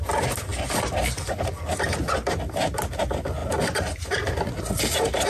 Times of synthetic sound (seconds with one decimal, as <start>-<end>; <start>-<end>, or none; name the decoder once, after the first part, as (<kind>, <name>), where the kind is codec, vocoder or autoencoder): none